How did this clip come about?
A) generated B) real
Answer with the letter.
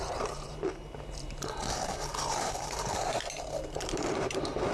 A